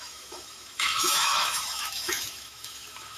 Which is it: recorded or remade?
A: remade